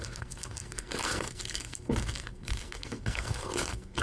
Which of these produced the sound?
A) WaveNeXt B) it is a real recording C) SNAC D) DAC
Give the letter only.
C